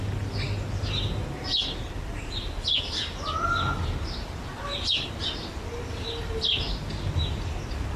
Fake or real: real